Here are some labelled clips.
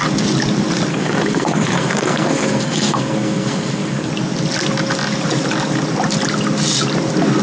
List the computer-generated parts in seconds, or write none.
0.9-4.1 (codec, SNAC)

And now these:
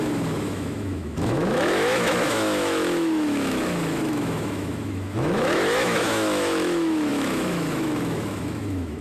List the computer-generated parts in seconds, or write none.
0.0-9.0 (autoencoder, DAC-VAE)

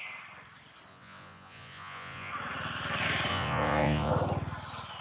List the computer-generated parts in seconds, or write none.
0.9-2.3 (vocoder, Vocos); 3.3-4.1

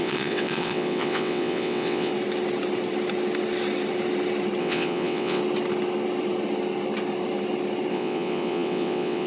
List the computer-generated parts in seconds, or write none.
0.0-2.1 (vocoder, WaveNeXt); 4.6-5.4; 7.9-9.3

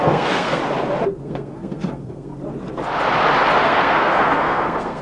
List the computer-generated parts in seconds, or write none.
0.0-0.6 (codec, SNAC); 1.2-2.3; 3.6-5.0

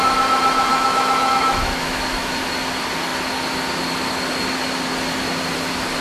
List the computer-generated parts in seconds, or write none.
0.7-2.4 (autoencoder, DAC-VAE)

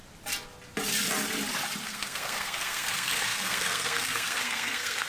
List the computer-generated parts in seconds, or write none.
1.8-5.1 (codec, SNAC)